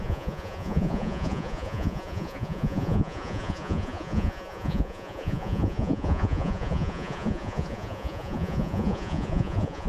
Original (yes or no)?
no